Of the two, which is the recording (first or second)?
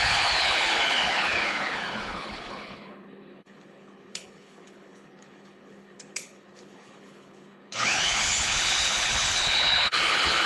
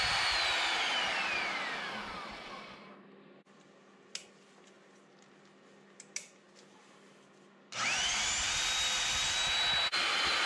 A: second